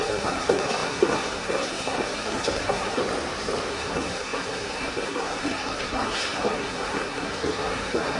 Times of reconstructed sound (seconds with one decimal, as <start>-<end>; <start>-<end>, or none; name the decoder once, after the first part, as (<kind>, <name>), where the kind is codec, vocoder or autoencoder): 0.0-3.0 (codec, SNAC); 3.7-8.2